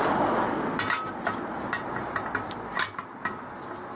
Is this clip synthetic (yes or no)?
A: no